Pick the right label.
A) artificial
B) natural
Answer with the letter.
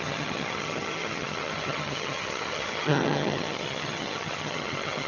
A